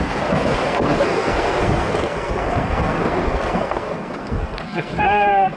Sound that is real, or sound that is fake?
fake